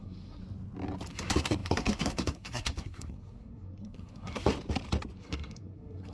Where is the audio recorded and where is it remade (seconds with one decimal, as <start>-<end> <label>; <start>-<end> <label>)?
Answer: 0.0-0.4 remade; 0.4-1.1 recorded; 1.1-4.5 remade; 4.5-5.2 recorded; 5.2-6.1 remade